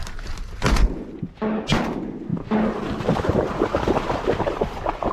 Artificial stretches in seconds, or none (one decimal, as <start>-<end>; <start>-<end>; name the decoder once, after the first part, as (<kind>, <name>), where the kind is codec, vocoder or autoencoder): none